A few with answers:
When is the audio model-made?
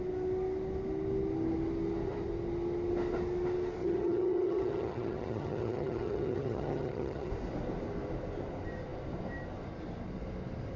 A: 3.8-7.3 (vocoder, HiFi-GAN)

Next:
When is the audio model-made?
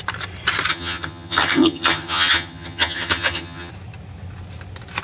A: 0.7-3.7 (vocoder, HiFi-GAN)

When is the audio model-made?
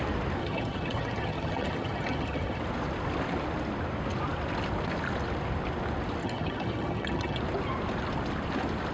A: 0.4-2.6 (vocoder, HiFi-GAN); 6.2-7.4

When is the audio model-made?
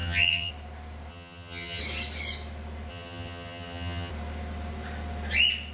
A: 0.0-0.5 (vocoder, HiFi-GAN); 1.1-1.8; 2.9-4.1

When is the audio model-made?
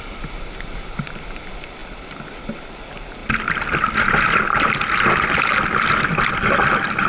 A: none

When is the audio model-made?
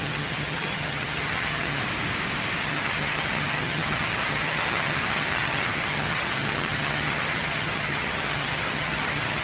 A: 0.0-1.8 (vocoder, HiFi-GAN); 2.6-9.4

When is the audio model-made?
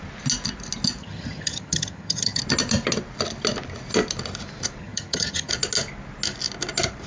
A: 1.0-2.4 (vocoder, HiFi-GAN); 4.8-5.5